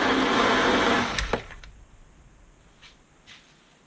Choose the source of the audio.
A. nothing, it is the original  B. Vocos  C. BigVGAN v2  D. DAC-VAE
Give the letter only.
A